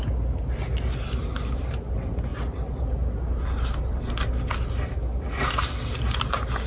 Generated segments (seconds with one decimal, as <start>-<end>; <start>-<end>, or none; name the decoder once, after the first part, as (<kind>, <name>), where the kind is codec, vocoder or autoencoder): none